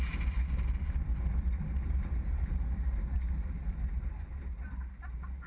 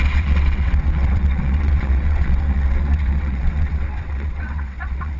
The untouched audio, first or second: first